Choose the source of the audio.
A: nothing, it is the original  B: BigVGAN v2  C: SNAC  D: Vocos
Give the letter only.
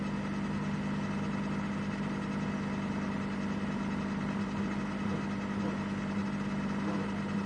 A